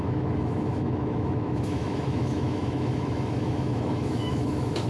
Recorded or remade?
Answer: remade